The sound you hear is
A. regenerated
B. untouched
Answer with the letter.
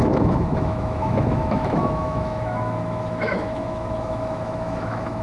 A